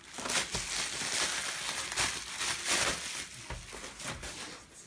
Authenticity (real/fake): real